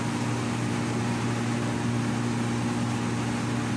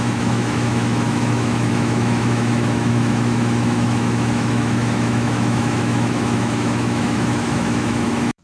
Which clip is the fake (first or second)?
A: second